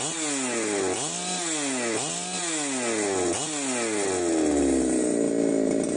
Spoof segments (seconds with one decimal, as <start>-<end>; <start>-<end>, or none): none